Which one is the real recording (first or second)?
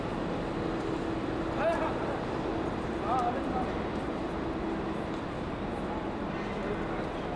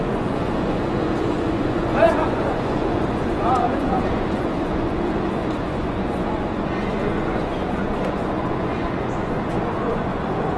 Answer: first